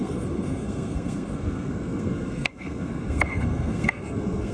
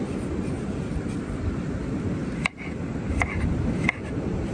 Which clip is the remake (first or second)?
first